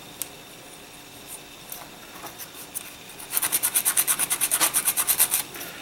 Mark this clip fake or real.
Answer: real